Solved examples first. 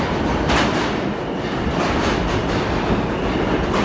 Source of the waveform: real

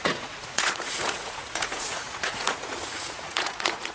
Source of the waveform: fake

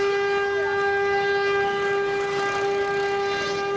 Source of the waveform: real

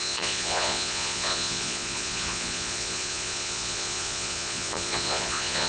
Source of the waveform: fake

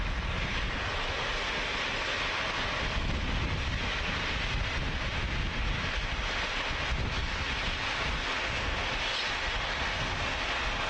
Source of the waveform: real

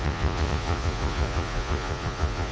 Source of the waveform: fake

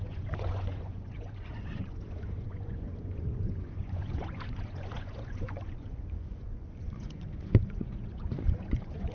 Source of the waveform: fake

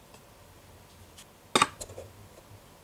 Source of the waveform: real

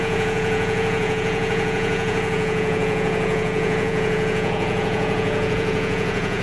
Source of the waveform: fake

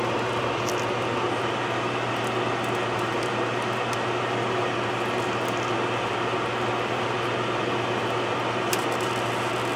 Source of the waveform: real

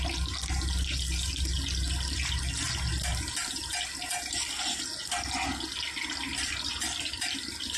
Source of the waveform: real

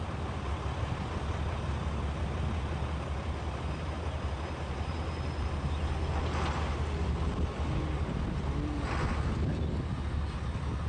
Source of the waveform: real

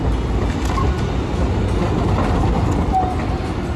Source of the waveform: real